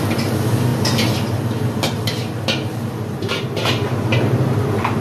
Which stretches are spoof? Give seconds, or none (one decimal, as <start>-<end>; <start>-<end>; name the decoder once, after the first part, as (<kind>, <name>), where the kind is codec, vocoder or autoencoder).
none